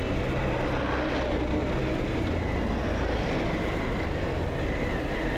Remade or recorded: recorded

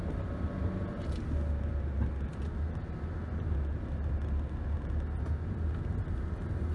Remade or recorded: recorded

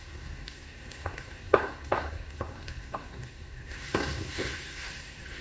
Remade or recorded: remade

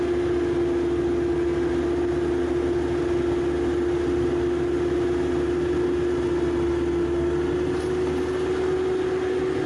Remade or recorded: recorded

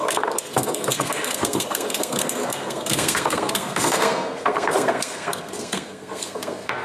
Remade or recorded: remade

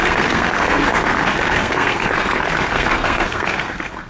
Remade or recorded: remade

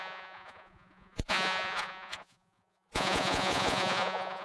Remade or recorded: remade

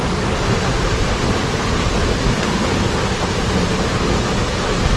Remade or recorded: recorded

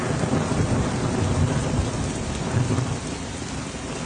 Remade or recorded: recorded